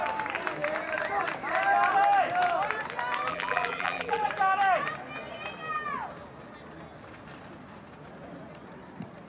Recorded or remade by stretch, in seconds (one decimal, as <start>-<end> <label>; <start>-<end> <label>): 0.0-3.3 recorded; 3.3-4.3 remade; 4.3-9.3 recorded